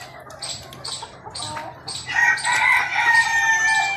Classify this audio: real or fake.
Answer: real